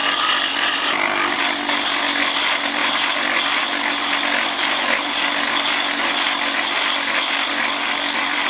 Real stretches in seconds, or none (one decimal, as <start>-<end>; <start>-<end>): 0.0-8.5